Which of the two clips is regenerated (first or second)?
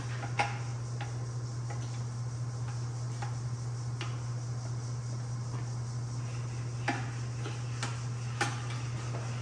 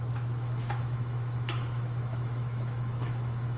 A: second